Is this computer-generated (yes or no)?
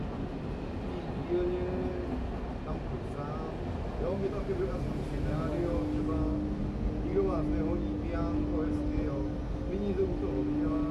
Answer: no